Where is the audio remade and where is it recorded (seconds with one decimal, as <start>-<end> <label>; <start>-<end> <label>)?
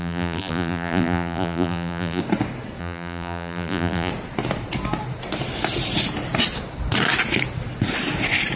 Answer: 0.0-2.2 remade; 2.2-2.8 recorded; 2.8-4.1 remade; 4.1-8.6 recorded